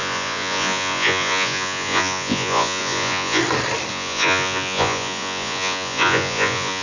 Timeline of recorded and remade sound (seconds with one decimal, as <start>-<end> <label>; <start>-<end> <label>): 0.0-3.4 remade; 3.4-3.9 recorded; 3.9-6.8 remade